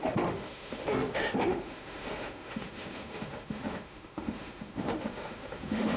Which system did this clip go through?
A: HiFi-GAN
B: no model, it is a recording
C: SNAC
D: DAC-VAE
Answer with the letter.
D